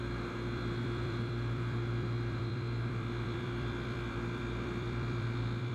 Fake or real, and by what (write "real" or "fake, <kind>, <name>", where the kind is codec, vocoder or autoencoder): fake, vocoder, BigVGAN v2